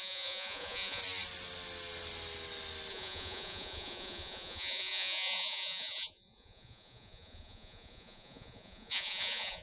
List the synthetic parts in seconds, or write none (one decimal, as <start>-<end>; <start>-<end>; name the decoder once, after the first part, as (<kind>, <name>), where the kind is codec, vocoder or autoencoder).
0.0-1.0 (vocoder, Vocos); 2.9-9.6